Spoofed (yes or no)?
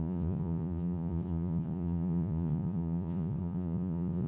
yes